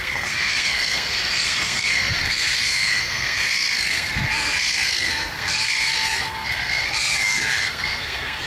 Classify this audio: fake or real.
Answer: fake